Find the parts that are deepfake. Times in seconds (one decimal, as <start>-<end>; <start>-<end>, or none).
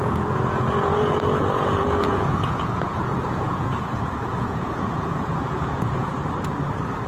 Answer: 0.0-6.1